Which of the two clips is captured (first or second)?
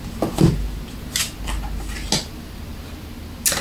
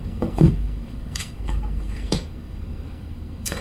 first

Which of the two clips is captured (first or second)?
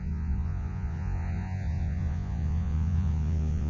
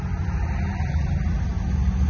second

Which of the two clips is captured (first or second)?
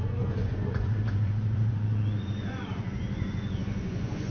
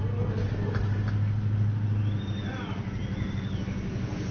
second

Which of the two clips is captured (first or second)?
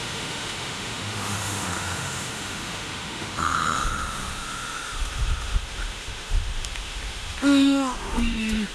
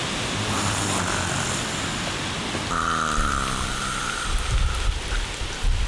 second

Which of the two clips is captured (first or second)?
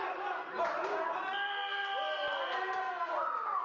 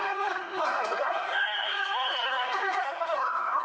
first